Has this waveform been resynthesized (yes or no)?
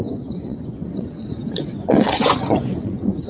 yes